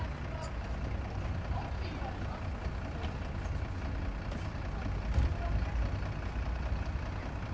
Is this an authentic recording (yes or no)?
yes